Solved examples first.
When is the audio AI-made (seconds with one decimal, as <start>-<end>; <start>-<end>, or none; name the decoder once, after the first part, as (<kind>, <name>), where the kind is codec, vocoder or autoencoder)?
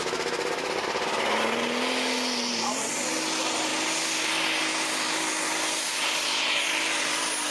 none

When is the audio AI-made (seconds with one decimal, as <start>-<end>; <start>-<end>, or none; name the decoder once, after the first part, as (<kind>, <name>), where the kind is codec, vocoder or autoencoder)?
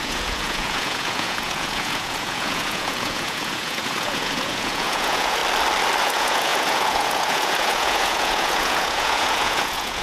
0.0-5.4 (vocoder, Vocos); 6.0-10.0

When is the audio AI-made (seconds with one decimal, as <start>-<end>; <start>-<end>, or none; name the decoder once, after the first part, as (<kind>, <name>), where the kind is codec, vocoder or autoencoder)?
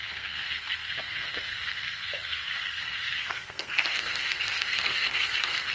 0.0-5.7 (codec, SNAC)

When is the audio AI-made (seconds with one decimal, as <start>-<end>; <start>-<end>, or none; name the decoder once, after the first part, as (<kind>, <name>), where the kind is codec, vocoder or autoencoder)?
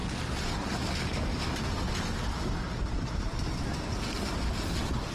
none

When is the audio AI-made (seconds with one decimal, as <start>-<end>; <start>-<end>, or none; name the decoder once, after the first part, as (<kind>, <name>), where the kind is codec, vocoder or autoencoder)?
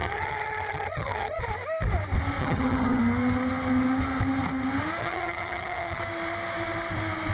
0.0-1.4 (vocoder, HiFi-GAN); 2.4-3.0; 5.0-6.0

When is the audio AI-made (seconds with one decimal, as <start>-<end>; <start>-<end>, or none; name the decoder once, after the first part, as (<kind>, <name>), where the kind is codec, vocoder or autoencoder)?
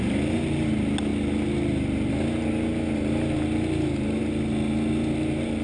none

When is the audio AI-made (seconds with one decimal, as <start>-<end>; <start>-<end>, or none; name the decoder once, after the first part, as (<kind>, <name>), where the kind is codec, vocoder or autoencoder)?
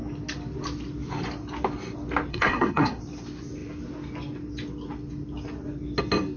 2.3-3.0 (codec, SNAC)